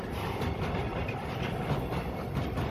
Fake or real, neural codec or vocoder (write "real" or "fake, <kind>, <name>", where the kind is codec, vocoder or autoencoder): real